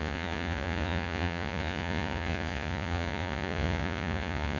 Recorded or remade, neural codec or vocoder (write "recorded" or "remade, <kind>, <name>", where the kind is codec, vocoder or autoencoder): remade, vocoder, Vocos